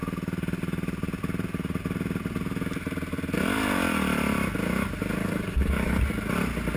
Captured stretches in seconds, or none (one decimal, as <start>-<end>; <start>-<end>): 0.0-5.2; 6.0-6.8